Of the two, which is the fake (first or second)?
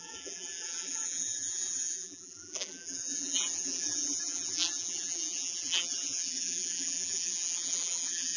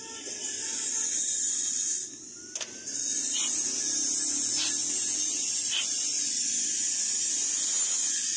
first